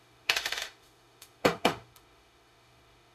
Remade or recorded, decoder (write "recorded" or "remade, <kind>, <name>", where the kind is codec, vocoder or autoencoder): remade, autoencoder, DAC-VAE